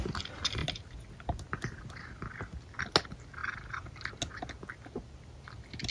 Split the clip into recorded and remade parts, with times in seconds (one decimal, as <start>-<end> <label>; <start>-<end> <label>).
0.0-5.9 recorded

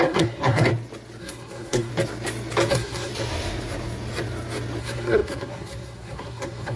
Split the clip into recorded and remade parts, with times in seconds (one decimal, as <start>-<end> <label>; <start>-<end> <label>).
0.0-0.7 remade; 0.7-1.2 recorded; 1.2-1.9 remade; 1.9-2.7 recorded; 2.7-3.1 remade; 3.1-4.8 recorded; 4.8-6.8 remade

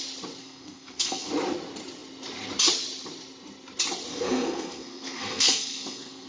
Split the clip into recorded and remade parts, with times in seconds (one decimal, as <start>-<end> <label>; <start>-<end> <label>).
0.0-0.4 recorded; 0.4-1.3 remade; 1.3-4.1 recorded; 4.1-6.3 remade

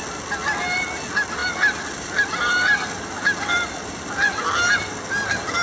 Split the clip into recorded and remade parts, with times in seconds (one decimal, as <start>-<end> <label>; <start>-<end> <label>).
0.0-1.4 recorded; 1.4-4.0 remade; 4.0-5.6 recorded

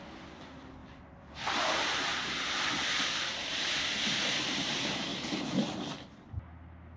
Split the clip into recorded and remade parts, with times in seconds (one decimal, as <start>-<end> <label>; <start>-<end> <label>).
0.0-2.1 recorded; 2.1-2.7 remade; 2.7-7.0 recorded